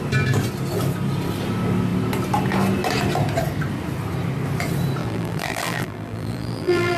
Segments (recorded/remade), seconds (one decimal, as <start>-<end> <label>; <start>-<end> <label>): 0.0-5.0 recorded; 5.0-7.0 remade

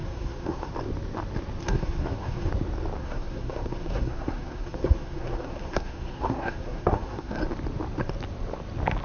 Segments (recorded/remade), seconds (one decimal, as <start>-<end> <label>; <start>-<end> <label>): 0.0-0.7 remade; 0.7-1.6 recorded; 1.6-2.5 remade; 2.5-3.0 recorded; 3.0-7.4 remade; 7.4-9.0 recorded

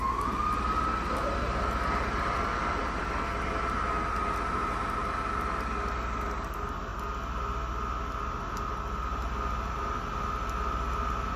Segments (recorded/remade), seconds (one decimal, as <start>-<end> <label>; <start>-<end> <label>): 0.0-11.4 recorded

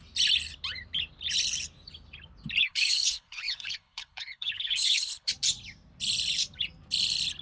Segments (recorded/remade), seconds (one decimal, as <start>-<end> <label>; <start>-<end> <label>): 0.0-2.6 recorded; 2.6-5.3 remade; 5.3-7.4 recorded

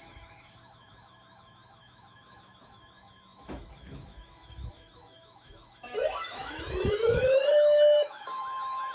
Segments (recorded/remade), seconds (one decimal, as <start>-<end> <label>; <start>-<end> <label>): 0.0-8.9 remade

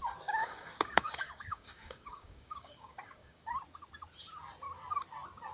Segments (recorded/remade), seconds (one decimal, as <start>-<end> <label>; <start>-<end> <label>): 0.0-0.4 recorded; 0.4-3.5 remade; 3.5-5.5 recorded